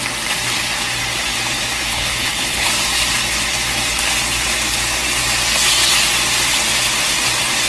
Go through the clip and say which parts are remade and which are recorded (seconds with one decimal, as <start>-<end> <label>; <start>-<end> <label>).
0.0-1.9 recorded; 1.9-2.7 remade; 2.7-7.7 recorded